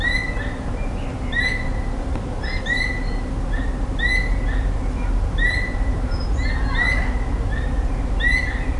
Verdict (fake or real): real